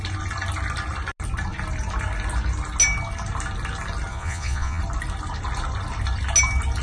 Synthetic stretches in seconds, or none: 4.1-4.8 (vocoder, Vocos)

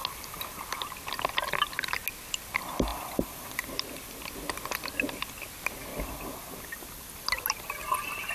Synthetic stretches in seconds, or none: 0.0-0.6 (vocoder, BigVGAN v2); 2.9-3.7; 5.9-8.3

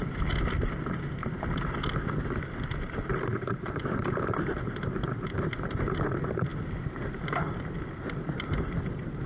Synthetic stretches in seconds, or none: none

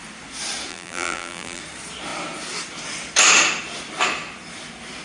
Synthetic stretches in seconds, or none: 0.7-1.6 (vocoder, BigVGAN v2)

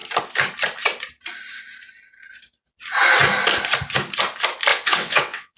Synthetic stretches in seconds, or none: 4.7-5.6 (vocoder, WaveNeXt)

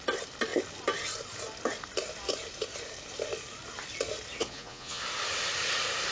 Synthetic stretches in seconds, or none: 4.4-5.0 (vocoder, Vocos)

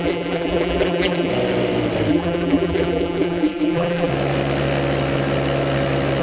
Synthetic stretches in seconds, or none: 0.0-1.3 (vocoder, BigVGAN v2); 2.1-4.1